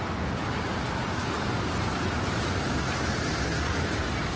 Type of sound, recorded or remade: recorded